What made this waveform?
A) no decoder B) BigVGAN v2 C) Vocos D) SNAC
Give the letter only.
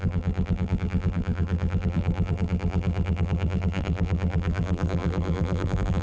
B